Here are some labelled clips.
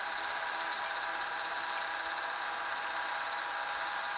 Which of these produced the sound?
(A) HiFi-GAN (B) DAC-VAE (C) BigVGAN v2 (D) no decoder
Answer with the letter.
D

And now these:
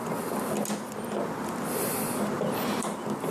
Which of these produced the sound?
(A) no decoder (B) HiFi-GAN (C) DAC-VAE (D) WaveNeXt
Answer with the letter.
A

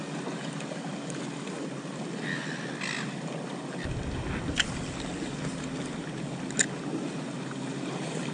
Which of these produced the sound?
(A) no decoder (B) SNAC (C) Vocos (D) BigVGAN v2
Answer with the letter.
A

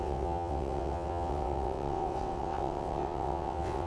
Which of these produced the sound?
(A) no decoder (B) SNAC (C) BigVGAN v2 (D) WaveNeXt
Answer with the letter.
D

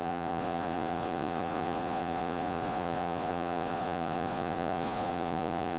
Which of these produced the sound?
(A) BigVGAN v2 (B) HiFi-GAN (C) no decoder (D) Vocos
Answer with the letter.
D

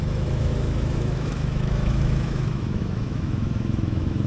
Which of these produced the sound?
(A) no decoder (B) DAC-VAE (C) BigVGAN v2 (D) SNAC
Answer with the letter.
B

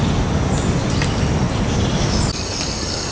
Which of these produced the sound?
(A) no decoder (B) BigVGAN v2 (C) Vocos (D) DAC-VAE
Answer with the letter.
A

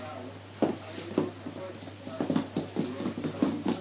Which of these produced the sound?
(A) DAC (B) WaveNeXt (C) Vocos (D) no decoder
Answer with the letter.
D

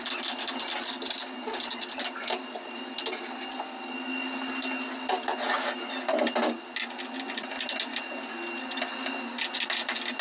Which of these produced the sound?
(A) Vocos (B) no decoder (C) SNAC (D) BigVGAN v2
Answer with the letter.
B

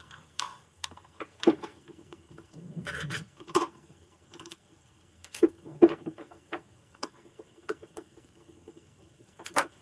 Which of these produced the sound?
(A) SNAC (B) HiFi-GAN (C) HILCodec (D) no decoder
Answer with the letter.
A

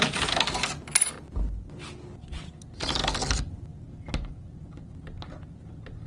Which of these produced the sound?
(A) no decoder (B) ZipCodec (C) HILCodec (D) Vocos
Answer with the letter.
A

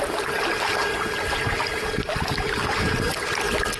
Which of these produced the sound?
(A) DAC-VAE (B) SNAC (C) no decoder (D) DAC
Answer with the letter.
C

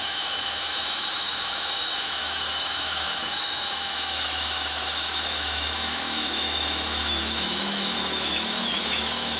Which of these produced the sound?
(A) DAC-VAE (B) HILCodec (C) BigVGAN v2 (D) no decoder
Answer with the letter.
A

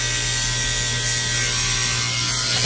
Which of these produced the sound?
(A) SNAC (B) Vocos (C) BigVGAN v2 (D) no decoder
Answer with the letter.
D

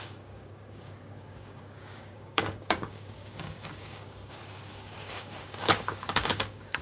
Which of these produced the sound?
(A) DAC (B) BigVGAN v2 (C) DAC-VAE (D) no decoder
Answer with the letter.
A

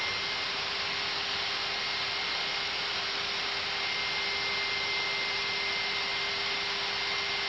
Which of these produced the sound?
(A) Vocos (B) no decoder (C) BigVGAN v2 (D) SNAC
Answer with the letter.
B